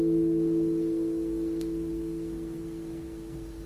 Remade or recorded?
remade